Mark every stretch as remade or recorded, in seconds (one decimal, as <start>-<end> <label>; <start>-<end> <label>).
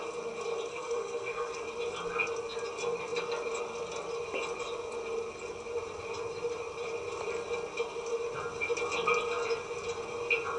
0.0-0.7 recorded; 0.7-1.6 remade; 1.6-10.6 recorded